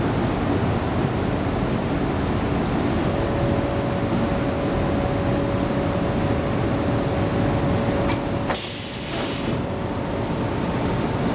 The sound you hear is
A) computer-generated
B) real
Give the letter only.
B